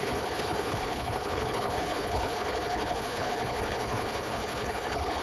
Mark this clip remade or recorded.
remade